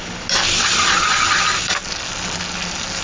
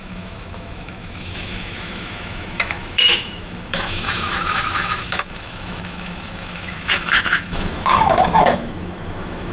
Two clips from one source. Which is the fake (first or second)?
second